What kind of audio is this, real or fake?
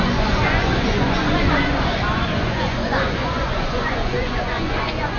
fake